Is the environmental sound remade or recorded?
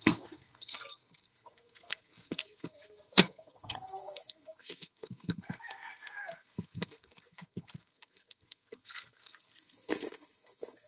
remade